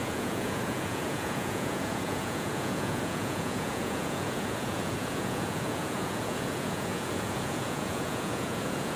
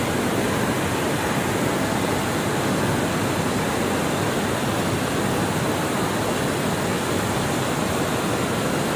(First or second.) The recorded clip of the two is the second